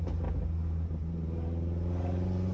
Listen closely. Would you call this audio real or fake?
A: real